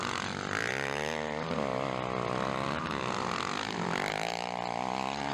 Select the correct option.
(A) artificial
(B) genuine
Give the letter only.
B